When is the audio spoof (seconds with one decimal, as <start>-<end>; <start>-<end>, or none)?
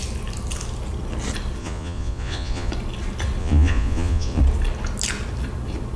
1.6-2.7; 3.4-4.4